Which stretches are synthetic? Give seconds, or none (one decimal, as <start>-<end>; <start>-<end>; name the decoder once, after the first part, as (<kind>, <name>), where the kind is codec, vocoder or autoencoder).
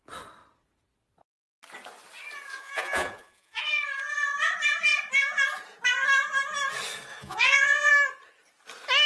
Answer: 2.5-3.6 (vocoder, Vocos); 7.1-7.9